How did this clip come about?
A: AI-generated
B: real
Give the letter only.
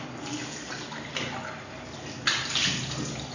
B